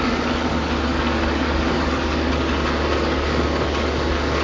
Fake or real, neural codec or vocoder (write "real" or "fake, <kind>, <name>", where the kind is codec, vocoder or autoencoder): fake, codec, DAC